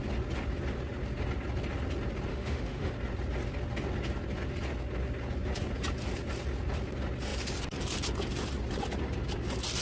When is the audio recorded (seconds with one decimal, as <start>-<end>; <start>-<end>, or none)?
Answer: 0.0-2.3; 2.9-9.8